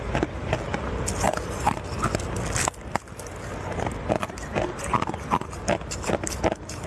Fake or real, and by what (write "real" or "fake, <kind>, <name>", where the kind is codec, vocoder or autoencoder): real